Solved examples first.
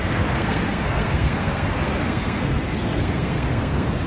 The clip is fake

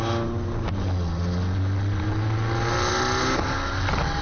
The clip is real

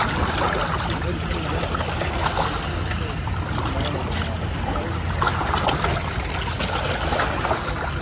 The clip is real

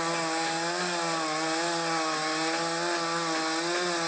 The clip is real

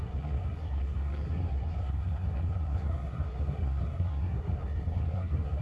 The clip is fake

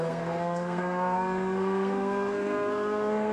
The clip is fake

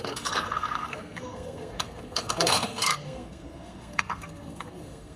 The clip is fake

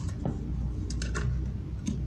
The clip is real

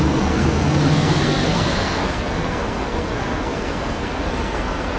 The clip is fake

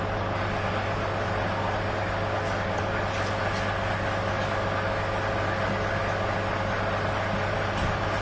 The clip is real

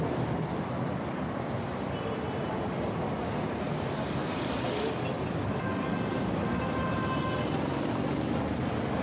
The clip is real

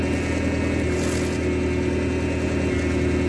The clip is real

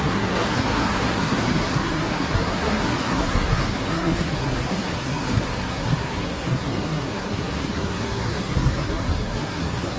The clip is fake